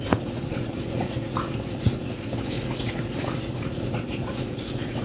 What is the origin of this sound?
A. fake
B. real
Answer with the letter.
A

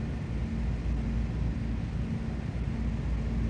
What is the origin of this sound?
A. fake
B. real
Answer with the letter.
B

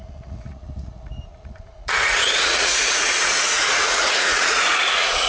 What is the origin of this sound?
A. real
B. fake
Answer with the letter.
B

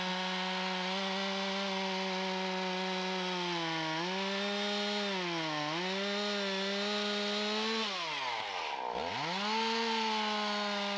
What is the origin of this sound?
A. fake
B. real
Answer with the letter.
B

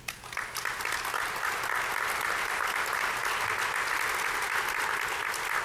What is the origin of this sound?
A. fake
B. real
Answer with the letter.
B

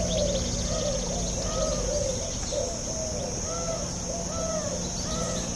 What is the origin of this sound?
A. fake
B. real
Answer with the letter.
B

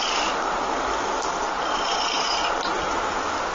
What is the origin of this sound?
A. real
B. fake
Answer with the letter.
A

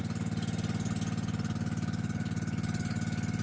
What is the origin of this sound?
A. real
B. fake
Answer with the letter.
A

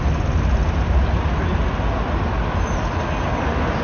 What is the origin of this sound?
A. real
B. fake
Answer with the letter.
A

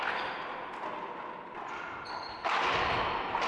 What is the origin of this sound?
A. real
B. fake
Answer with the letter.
A